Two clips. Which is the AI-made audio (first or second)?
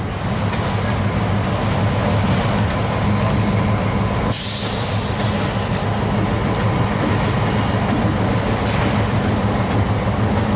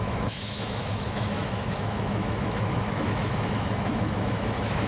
second